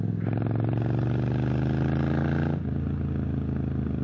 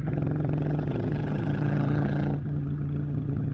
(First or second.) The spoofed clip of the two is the second